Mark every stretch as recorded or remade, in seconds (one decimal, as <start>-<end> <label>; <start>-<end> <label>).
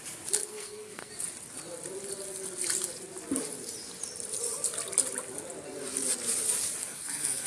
0.0-0.4 recorded; 0.4-1.1 remade; 1.1-6.8 recorded; 6.8-7.5 remade